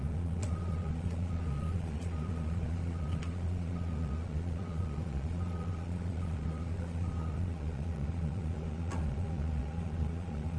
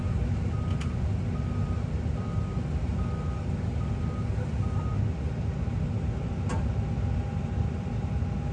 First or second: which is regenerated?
first